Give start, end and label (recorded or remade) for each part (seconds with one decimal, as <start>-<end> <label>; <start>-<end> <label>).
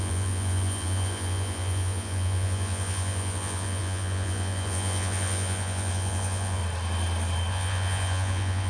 0.0-6.6 remade; 6.6-7.5 recorded; 7.5-8.7 remade